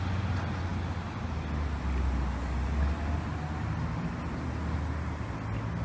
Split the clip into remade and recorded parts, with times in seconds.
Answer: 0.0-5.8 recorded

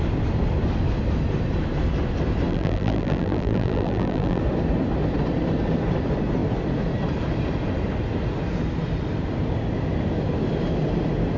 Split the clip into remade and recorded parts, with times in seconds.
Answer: 0.0-2.5 recorded; 2.5-4.4 remade; 4.4-11.4 recorded

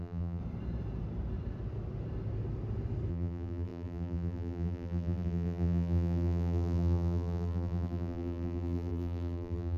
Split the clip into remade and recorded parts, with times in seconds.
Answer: 0.0-0.4 remade; 0.4-3.1 recorded; 3.1-9.8 remade

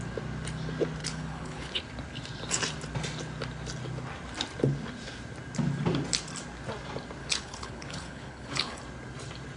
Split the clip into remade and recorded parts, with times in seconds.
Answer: 0.0-1.0 recorded; 1.0-1.8 remade; 1.8-7.2 recorded; 7.2-8.8 remade; 8.8-9.6 recorded

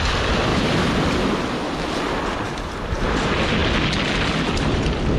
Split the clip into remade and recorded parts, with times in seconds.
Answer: 0.0-5.2 recorded

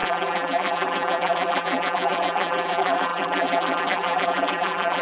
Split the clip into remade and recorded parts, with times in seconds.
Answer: 0.0-5.0 remade